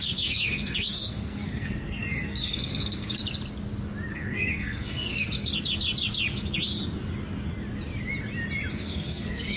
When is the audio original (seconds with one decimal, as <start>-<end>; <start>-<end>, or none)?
3.2-4.1; 5.5-8.7